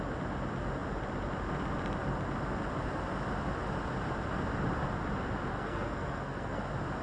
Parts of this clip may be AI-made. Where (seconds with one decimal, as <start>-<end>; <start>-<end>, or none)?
5.5-6.6